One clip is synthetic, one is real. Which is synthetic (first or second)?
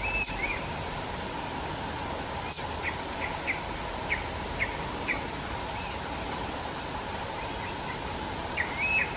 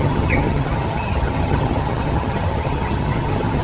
second